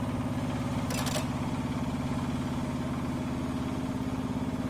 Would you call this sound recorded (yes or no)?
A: yes